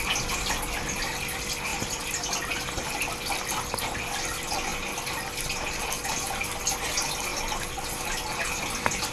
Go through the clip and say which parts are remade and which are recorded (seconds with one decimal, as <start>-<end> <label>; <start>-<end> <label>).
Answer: 0.0-9.1 recorded

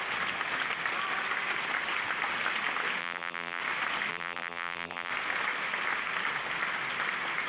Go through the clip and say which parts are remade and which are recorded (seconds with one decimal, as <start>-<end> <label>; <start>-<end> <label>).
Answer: 0.0-3.0 recorded; 3.0-3.6 remade; 3.6-4.1 recorded; 4.1-5.1 remade; 5.1-7.5 recorded

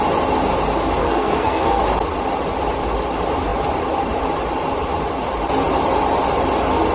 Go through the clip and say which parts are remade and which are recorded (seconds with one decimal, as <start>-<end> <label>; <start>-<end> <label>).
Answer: 0.0-1.0 recorded; 1.0-1.8 remade; 1.8-6.9 recorded

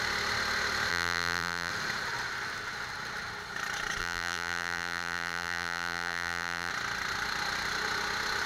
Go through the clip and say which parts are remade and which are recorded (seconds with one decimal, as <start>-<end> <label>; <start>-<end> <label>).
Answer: 0.0-0.9 recorded; 0.9-1.7 remade; 1.7-4.0 recorded; 4.0-6.7 remade; 6.7-8.5 recorded

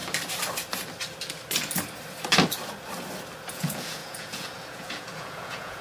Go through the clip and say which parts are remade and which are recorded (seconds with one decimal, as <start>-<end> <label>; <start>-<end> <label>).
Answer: 0.0-3.5 recorded; 3.5-5.8 remade

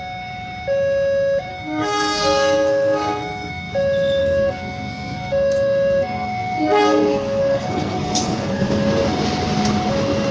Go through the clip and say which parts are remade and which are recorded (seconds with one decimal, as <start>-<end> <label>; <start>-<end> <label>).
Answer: 0.0-1.5 recorded; 1.5-3.7 remade; 3.7-4.2 recorded; 4.2-8.9 remade; 8.9-10.3 recorded